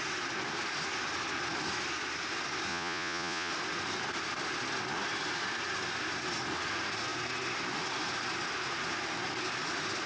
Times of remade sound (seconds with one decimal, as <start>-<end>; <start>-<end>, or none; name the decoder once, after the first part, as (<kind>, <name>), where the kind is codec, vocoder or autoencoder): 2.7-3.5 (vocoder, Vocos)